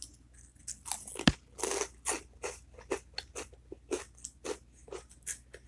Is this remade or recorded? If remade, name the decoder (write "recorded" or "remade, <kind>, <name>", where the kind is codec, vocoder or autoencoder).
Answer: recorded